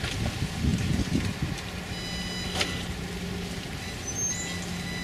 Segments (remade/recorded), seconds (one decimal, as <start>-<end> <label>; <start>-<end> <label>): 0.0-5.0 recorded